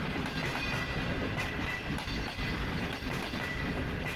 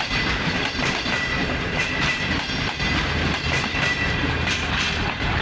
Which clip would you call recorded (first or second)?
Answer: first